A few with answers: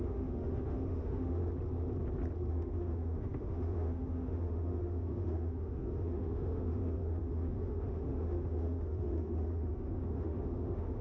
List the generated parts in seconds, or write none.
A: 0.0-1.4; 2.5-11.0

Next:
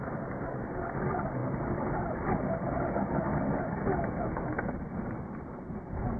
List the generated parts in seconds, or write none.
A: none

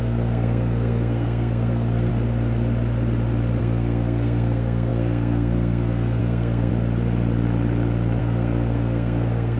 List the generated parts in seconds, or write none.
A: 0.0-2.1; 3.6-6.7; 8.2-9.6

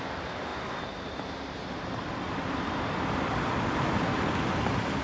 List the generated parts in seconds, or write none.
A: none

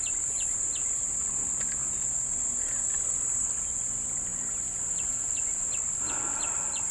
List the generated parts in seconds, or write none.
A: 4.3-6.1

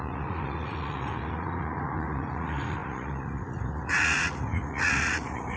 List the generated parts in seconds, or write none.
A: 0.0-5.6